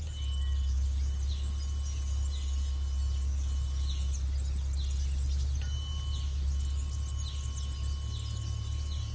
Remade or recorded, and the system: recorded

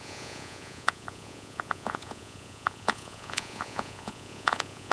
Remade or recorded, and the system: remade, vocoder, Vocos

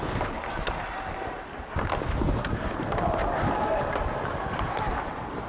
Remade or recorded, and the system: recorded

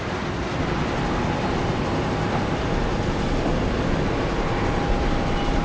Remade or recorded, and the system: recorded